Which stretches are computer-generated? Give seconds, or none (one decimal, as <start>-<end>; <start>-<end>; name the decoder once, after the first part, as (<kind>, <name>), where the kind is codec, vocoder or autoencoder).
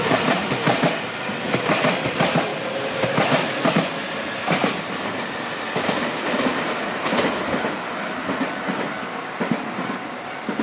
none